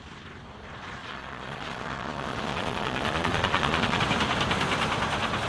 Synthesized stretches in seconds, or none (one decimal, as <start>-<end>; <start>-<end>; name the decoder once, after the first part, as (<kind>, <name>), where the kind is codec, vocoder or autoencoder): 1.0-4.0 (vocoder, Vocos)